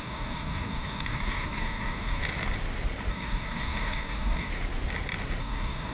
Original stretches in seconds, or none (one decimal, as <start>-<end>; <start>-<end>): 2.2-3.1; 4.5-5.4

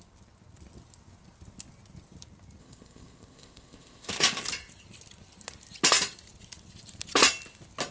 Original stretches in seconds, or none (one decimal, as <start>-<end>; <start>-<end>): 0.0-2.6; 4.1-7.9

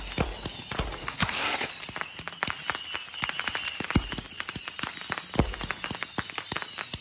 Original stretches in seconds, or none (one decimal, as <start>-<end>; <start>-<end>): 0.0-1.0; 1.7-7.0

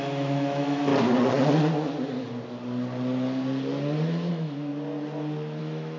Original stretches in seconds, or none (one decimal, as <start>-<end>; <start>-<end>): 0.9-4.3; 4.7-5.6

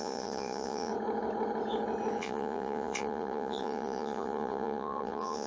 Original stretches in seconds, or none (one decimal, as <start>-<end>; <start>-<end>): 0.9-2.2